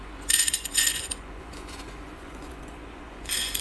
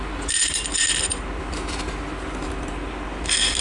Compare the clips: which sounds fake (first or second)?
first